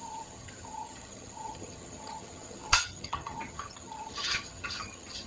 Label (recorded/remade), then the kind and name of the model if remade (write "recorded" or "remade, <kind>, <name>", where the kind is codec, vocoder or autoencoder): remade, vocoder, HiFi-GAN